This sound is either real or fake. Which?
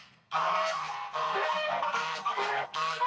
fake